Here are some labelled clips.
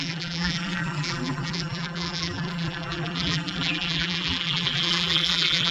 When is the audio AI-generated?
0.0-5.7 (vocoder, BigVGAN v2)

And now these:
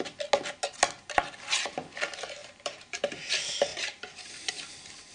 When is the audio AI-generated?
2.4-3.2 (vocoder, BigVGAN v2); 3.7-4.5